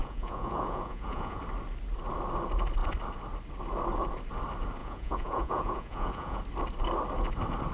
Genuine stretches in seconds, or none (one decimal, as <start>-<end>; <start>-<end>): 1.4-4.8; 6.4-7.7